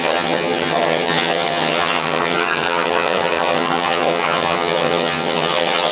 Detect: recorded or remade remade